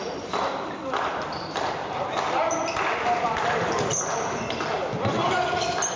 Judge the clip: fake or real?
fake